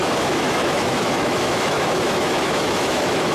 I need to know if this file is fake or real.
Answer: fake